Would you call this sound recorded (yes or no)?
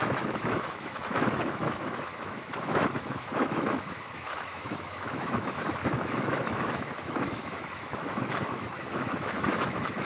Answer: no